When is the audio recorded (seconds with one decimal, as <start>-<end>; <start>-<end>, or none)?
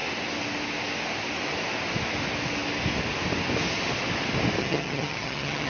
0.0-4.6